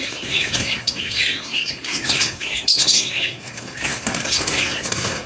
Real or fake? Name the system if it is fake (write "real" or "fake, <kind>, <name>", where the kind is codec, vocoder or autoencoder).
fake, codec, SNAC